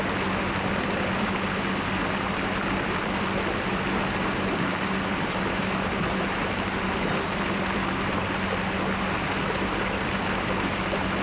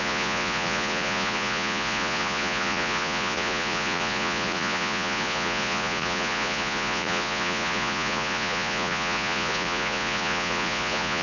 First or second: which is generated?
second